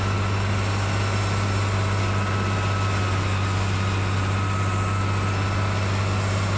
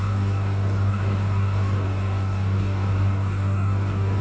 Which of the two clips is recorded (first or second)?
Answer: first